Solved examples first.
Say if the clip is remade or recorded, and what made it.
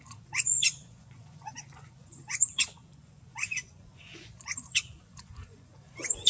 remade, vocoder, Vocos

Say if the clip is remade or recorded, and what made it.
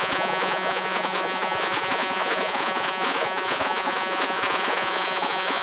remade, vocoder, Vocos